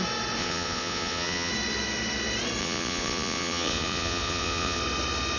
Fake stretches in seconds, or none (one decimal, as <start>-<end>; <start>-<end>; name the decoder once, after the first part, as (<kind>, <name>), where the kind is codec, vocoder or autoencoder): 0.4-1.5 (vocoder, Vocos); 2.6-4.8